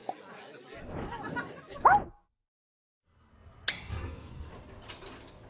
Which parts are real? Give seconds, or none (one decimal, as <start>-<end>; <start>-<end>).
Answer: 0.0-2.3; 3.3-3.9; 4.5-5.5